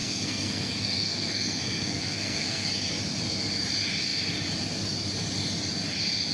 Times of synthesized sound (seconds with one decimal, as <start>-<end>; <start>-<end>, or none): 0.0-2.7